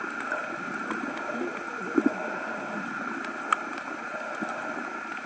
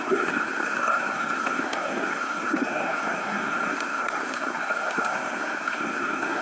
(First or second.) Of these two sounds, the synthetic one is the second